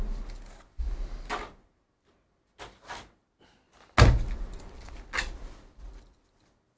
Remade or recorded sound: recorded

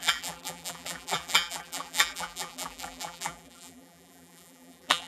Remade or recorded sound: remade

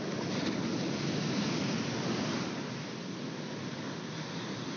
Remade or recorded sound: recorded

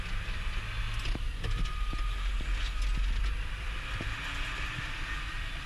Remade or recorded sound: recorded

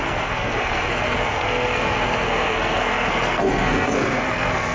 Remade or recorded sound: remade